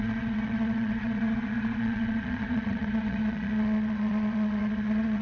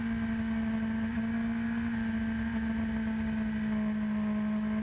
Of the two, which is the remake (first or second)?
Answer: first